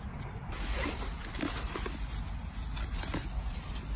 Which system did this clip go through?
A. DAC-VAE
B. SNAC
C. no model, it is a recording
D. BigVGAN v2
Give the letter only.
C